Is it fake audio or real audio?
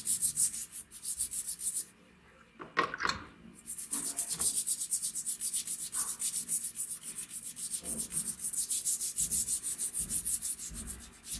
real